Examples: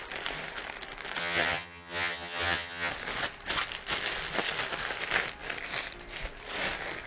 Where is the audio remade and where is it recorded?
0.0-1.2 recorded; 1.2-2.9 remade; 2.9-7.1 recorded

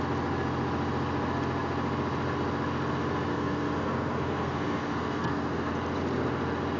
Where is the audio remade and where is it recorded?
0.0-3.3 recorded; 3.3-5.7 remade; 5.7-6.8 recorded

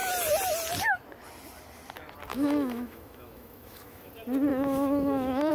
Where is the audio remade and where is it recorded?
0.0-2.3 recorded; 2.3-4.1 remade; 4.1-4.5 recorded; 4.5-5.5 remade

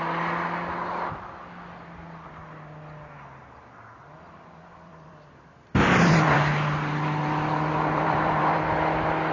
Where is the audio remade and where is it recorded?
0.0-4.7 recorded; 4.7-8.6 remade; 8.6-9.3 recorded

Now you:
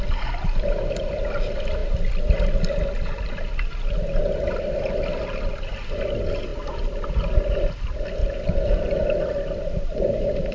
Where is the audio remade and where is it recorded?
0.0-10.5 recorded